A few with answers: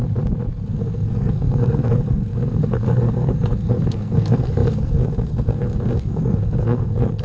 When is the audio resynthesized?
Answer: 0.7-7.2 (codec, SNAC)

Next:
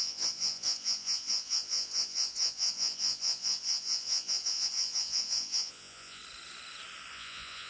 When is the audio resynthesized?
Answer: 0.0-6.2 (vocoder, Vocos); 7.1-7.7

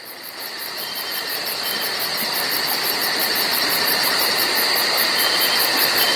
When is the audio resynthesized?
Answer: 0.5-4.2 (vocoder, BigVGAN v2)

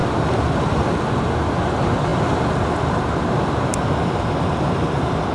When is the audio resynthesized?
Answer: 0.0-0.6 (vocoder, BigVGAN v2); 3.7-5.3

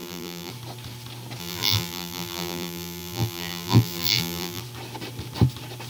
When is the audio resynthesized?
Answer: 0.0-0.5 (vocoder, BigVGAN v2); 1.4-4.6

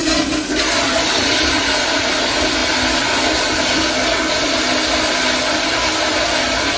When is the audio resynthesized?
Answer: none

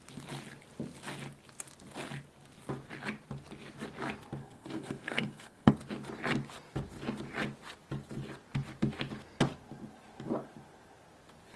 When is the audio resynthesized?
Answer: 4.4-5.7 (codec, SNAC)